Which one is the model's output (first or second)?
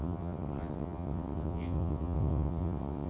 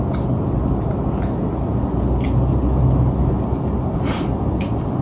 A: first